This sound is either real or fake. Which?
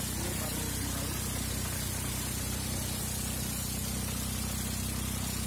real